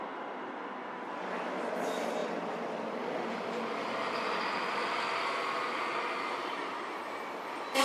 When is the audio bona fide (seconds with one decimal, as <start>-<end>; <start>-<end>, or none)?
0.0-7.8